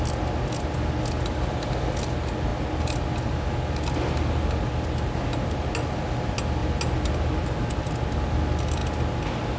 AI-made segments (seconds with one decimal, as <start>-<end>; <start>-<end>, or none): none